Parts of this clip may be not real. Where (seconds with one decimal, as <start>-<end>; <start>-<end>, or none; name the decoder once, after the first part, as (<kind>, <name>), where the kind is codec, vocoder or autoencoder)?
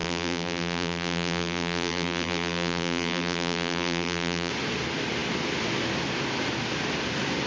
0.0-4.5 (vocoder, BigVGAN v2)